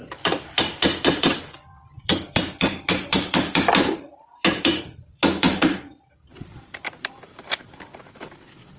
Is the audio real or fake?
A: fake